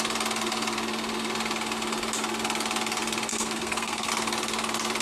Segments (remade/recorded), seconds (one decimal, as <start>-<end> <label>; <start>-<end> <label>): 0.0-3.3 recorded; 3.3-4.1 remade; 4.1-5.0 recorded